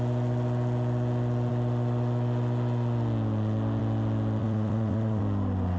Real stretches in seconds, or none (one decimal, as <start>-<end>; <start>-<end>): 0.0-4.4; 5.2-5.8